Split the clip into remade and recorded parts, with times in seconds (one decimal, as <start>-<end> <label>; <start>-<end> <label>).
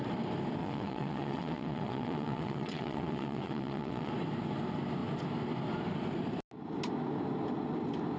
0.0-0.6 recorded; 0.6-4.1 remade; 4.1-8.2 recorded